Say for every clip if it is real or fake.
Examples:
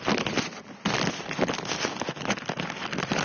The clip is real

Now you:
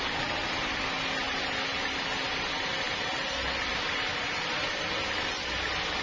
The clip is real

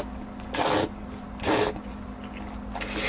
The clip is real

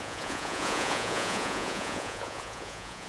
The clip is fake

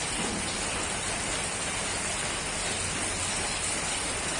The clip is real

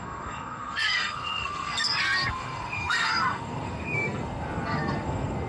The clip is fake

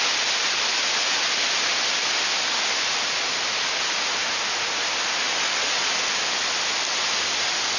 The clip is real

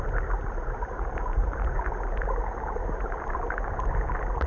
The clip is real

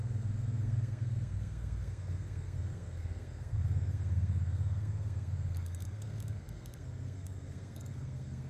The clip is fake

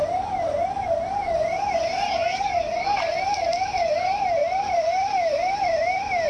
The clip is real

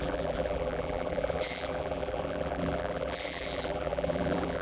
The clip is fake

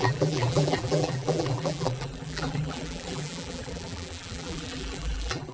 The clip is fake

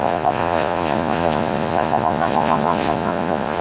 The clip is fake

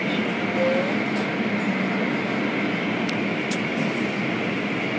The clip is real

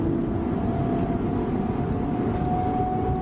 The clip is real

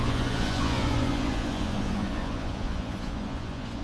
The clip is fake